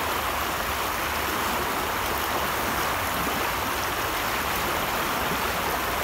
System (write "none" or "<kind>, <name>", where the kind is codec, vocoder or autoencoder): none